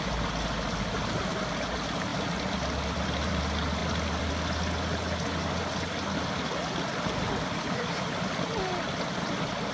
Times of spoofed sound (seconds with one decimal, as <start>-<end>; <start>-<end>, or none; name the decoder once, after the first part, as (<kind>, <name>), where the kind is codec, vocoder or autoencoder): 2.1-3.4 (vocoder, BigVGAN v2); 3.8-4.3